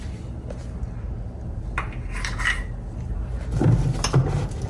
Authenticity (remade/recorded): recorded